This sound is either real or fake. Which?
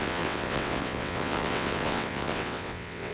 fake